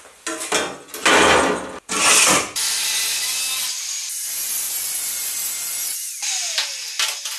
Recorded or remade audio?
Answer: recorded